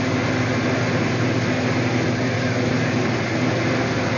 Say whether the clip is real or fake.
real